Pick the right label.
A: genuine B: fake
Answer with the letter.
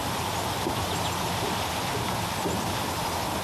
A